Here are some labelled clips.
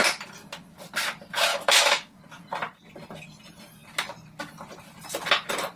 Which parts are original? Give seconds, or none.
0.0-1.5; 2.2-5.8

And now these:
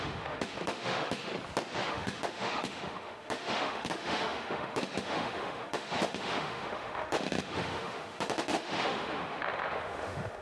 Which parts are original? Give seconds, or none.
1.3-1.9